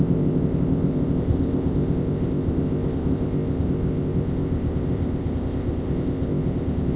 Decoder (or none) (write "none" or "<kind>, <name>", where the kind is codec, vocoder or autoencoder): codec, ZipCodec